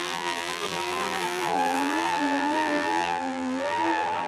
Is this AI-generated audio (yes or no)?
yes